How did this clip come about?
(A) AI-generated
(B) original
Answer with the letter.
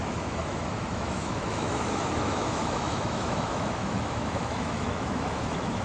A